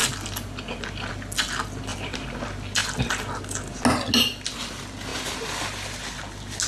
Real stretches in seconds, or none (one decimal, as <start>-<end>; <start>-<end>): 0.0-1.9; 2.4-6.7